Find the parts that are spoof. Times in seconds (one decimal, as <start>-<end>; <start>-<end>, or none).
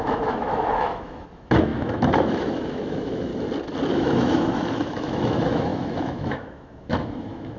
0.0-3.3; 3.9-7.6